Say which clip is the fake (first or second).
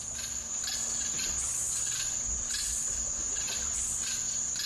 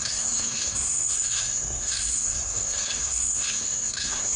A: second